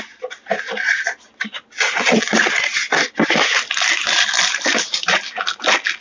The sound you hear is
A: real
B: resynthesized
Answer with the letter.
A